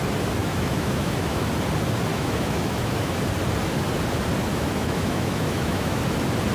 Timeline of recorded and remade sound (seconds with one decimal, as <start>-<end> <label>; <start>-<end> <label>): 0.0-0.4 recorded; 0.4-1.5 remade; 1.5-2.1 recorded; 2.1-3.2 remade; 3.2-4.5 recorded; 4.5-6.0 remade; 6.0-6.5 recorded